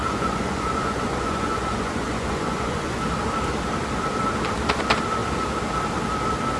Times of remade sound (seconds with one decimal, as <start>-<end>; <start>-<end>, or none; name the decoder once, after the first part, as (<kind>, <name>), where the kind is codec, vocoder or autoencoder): 0.0-3.0 (vocoder, Vocos)